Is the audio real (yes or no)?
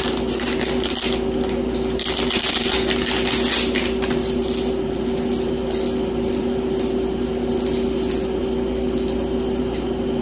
yes